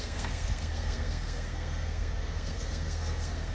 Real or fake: fake